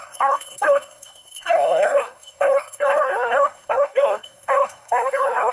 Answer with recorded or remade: remade